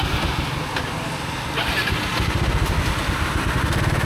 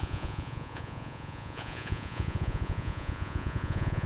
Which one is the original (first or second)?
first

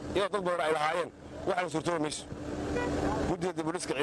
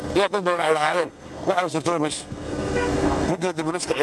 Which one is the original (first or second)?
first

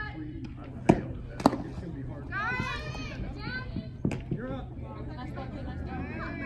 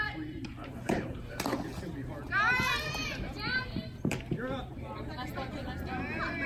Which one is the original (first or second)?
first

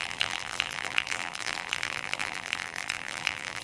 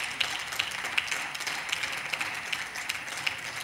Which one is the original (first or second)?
second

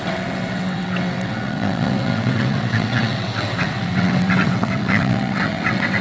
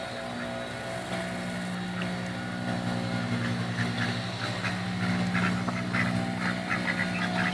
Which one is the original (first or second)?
second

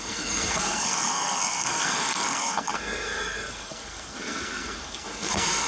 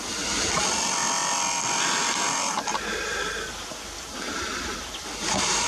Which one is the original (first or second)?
second